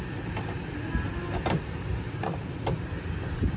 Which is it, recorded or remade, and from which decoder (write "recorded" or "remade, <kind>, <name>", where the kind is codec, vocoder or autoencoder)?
recorded